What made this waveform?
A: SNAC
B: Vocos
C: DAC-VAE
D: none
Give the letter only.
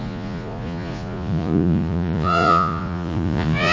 B